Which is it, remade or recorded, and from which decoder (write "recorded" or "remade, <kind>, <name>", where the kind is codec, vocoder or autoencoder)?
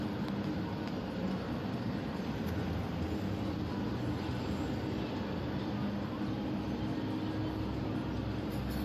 recorded